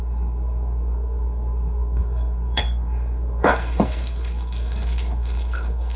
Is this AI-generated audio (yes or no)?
yes